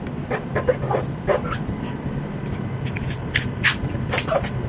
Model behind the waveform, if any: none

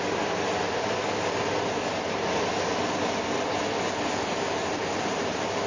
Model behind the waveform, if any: none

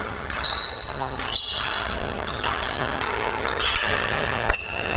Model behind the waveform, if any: vocoder, HiFi-GAN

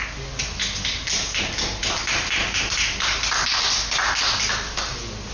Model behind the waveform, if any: none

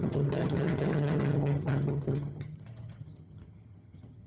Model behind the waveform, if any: vocoder, HiFi-GAN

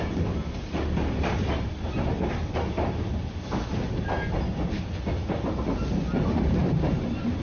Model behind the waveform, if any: none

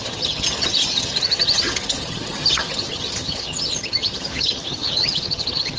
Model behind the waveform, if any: vocoder, HiFi-GAN